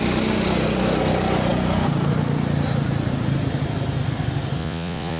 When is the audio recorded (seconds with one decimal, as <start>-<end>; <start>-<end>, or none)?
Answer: 0.0-4.6